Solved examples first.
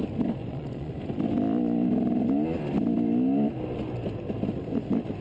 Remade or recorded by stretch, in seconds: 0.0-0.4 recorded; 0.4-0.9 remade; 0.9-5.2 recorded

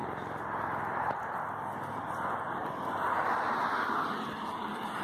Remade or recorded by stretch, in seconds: 0.0-5.0 recorded

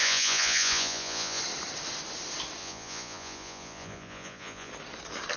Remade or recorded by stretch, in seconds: 0.0-1.4 remade; 1.4-2.6 recorded; 2.6-4.7 remade; 4.7-5.4 recorded

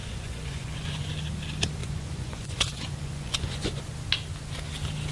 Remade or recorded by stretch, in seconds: 0.0-1.1 remade; 1.1-1.8 recorded; 1.8-3.8 remade; 3.8-5.1 recorded